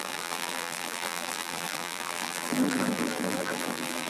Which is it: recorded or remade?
remade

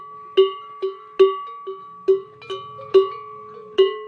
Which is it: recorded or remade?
recorded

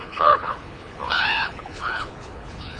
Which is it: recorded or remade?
remade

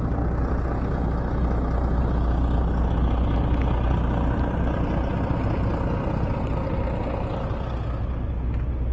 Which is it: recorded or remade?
recorded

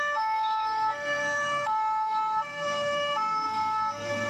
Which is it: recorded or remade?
remade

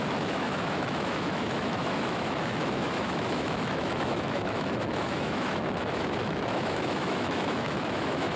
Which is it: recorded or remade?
remade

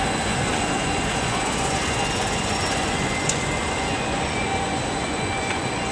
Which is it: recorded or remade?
remade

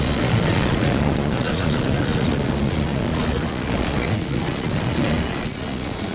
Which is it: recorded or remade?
remade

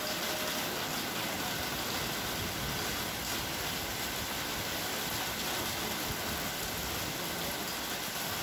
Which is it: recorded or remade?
recorded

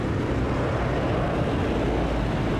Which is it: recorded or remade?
recorded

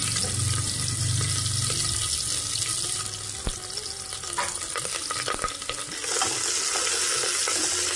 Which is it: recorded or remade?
recorded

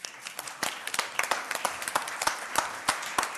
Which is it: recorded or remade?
remade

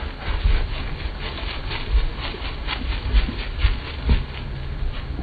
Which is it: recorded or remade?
recorded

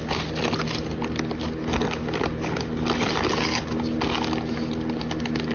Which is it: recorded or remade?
recorded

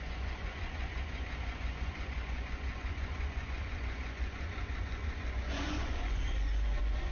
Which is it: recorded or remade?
remade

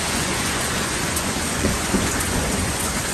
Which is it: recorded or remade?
remade